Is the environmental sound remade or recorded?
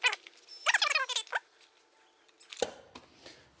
recorded